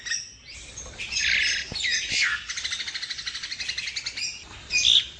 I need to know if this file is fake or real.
real